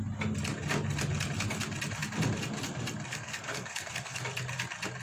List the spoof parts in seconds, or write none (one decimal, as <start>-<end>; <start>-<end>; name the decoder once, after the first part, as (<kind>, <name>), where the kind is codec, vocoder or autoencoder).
3.1-4.2 (codec, SNAC)